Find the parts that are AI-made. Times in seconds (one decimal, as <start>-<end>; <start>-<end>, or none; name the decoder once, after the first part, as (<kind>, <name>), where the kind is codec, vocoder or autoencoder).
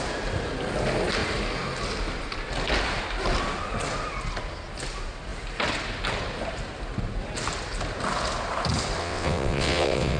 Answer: 9.0-10.2 (vocoder, WaveNeXt)